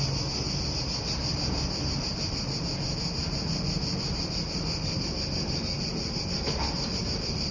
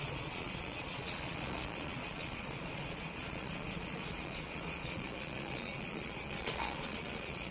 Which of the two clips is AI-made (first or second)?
second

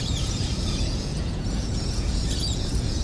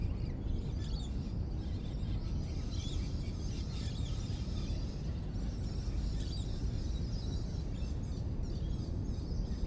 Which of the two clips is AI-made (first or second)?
first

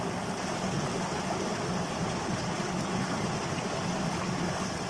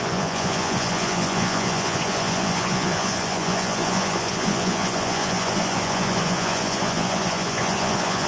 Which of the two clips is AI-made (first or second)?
second